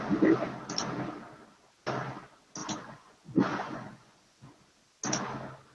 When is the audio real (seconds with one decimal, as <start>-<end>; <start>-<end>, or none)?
0.0-2.6; 4.5-5.7